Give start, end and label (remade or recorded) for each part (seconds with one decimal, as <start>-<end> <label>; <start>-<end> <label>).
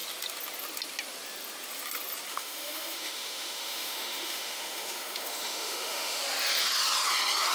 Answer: 0.0-2.3 recorded; 2.3-6.2 remade; 6.2-7.5 recorded